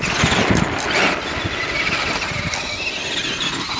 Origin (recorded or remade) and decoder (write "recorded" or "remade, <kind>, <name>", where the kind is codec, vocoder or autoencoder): recorded